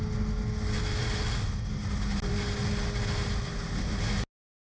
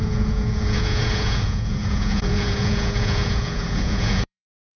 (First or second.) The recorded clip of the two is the first